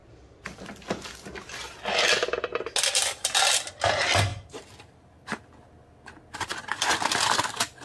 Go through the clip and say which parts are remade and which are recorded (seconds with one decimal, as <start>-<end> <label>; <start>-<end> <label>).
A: 0.0-4.3 recorded; 4.3-5.4 remade; 5.4-7.8 recorded